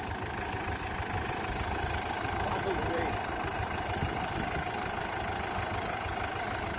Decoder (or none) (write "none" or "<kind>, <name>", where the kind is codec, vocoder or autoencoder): vocoder, BigVGAN v2